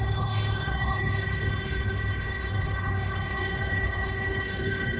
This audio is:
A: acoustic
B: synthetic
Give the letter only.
B